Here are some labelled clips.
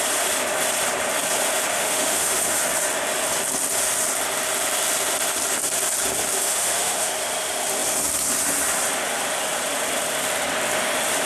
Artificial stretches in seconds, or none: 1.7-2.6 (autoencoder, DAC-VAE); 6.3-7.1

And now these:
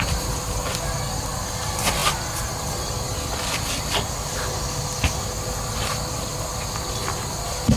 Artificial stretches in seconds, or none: none

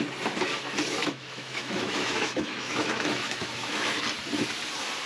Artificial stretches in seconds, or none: 1.0-4.0 (autoencoder, DAC-VAE)

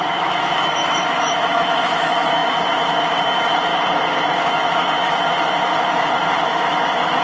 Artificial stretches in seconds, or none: 0.0-3.7 (autoencoder, DAC-VAE); 4.3-7.2